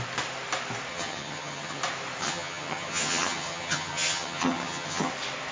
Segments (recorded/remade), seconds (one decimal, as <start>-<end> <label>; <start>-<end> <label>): 0.0-0.9 recorded; 0.9-1.8 remade; 1.8-2.2 recorded; 2.2-5.1 remade; 5.1-5.5 recorded